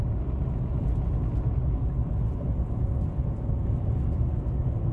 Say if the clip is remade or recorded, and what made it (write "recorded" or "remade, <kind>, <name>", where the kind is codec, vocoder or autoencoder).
recorded